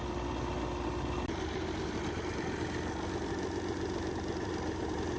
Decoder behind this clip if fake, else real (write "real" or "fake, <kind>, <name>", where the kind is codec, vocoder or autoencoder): real